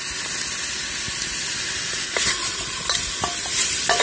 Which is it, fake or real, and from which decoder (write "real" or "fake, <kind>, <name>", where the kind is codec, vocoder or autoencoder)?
real